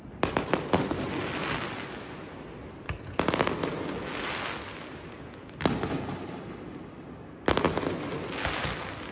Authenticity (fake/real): real